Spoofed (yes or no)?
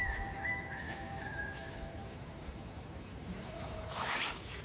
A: yes